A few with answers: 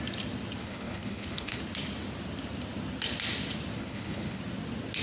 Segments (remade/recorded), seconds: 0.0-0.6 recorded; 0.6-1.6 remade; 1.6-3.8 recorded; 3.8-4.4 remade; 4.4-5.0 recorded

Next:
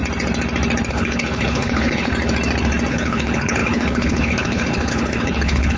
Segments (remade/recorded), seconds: 0.0-0.9 recorded; 0.9-2.1 remade; 2.1-2.9 recorded; 2.9-5.8 remade

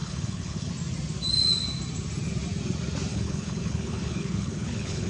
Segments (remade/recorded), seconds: 0.0-0.7 remade; 0.7-3.1 recorded; 3.1-5.1 remade